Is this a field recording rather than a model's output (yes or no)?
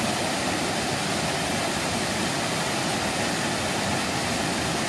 yes